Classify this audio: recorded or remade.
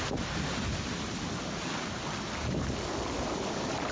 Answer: recorded